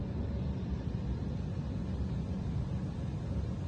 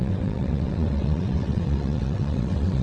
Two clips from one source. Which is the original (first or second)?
first